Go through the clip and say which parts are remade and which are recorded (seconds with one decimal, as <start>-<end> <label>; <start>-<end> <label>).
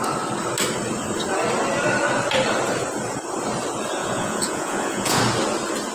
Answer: 0.0-4.0 recorded; 4.0-5.2 remade; 5.2-5.9 recorded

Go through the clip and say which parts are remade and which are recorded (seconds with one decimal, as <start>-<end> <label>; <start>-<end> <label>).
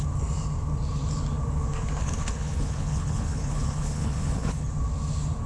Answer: 0.0-2.0 recorded; 2.0-4.7 remade; 4.7-5.5 recorded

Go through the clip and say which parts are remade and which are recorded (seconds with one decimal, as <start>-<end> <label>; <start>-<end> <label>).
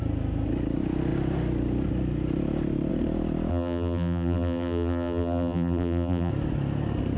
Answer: 0.0-3.5 recorded; 3.5-6.3 remade; 6.3-7.2 recorded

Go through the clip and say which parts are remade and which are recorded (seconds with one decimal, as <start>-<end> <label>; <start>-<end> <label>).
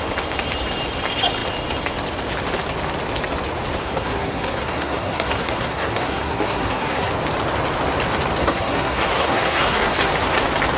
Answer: 0.0-3.8 recorded; 3.8-7.1 remade; 7.1-8.4 recorded; 8.4-10.1 remade; 10.1-10.8 recorded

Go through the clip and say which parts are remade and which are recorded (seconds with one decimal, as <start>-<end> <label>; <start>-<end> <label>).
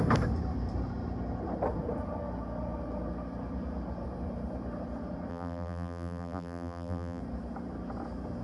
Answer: 0.0-5.3 recorded; 5.3-7.2 remade; 7.2-8.4 recorded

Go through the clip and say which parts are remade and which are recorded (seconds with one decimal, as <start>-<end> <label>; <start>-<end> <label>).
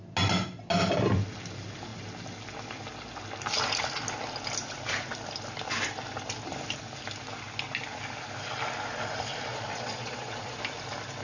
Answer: 0.0-9.5 recorded; 9.5-10.6 remade; 10.6-11.2 recorded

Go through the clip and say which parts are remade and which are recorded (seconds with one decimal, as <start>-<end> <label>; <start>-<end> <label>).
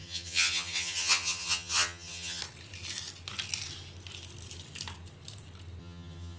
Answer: 0.0-2.4 remade; 2.4-5.8 recorded; 5.8-6.4 remade